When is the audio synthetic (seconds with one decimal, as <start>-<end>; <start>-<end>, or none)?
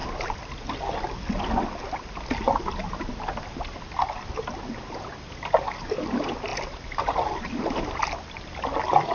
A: none